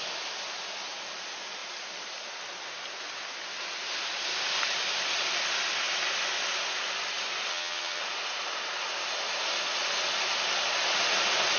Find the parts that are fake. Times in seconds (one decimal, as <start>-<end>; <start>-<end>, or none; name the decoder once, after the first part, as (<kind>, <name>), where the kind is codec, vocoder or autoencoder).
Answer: 7.5-8.0 (vocoder, HiFi-GAN)